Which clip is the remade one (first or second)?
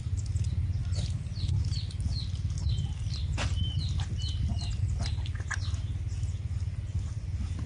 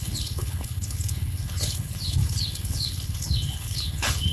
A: second